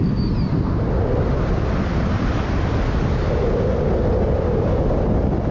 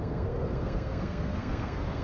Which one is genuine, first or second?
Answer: first